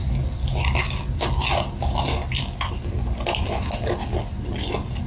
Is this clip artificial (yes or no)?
no